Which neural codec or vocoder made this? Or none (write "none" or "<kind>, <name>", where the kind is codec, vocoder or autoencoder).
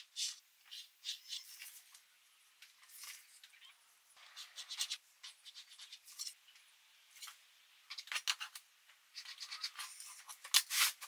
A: none